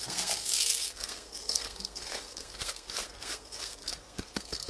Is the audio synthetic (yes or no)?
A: yes